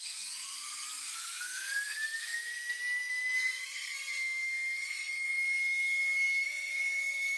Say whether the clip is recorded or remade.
remade